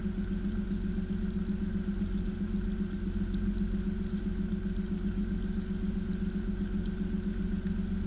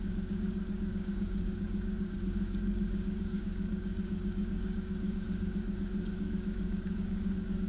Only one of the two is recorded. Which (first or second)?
first